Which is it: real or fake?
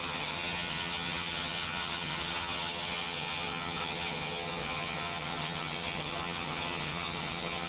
fake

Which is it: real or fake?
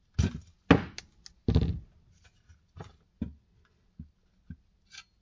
real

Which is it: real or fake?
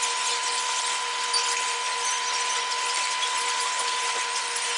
real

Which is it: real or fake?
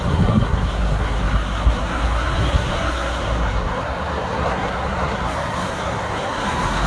fake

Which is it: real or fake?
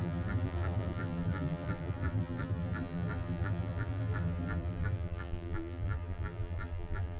fake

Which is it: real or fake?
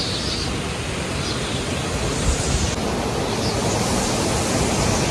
real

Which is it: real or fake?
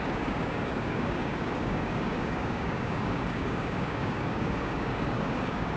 fake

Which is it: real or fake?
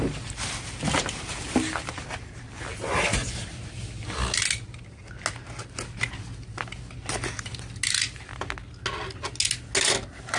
real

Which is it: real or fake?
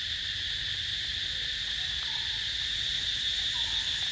real